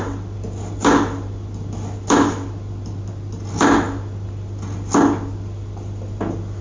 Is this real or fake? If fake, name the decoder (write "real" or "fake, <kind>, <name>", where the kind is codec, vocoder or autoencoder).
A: real